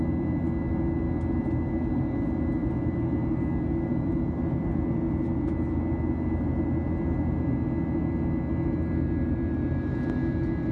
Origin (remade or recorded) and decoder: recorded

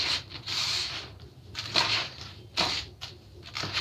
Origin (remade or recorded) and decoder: recorded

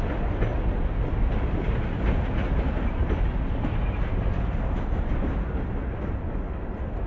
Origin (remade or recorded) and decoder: recorded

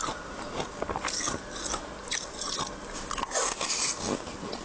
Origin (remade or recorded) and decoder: recorded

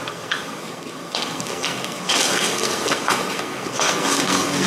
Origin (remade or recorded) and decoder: remade, codec, SNAC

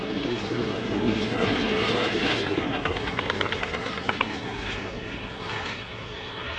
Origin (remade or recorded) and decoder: remade, codec, SNAC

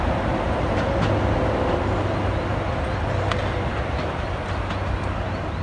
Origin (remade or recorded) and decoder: recorded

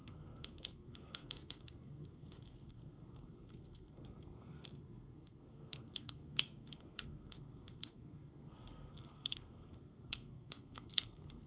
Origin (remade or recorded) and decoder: remade, codec, SNAC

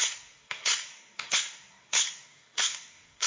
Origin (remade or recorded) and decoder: remade, codec, SNAC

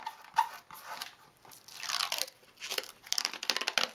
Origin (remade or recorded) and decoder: recorded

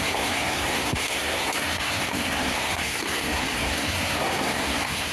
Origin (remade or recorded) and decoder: remade, codec, SNAC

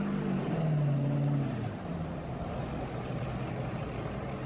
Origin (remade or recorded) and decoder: recorded